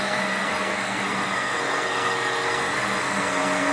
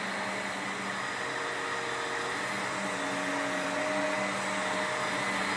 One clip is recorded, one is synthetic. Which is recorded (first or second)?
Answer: second